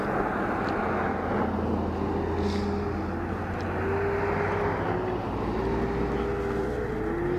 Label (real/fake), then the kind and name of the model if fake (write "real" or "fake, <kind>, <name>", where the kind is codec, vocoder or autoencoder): real